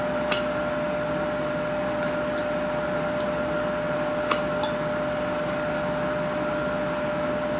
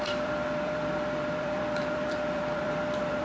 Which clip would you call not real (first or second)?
second